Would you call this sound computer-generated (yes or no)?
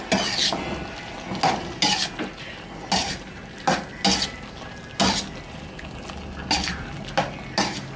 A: no